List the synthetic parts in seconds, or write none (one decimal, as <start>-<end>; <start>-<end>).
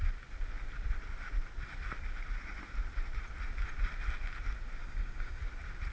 4.8-5.4